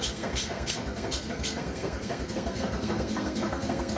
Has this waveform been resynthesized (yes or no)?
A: yes